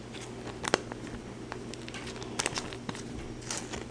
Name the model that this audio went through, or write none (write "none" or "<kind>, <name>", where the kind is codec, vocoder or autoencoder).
none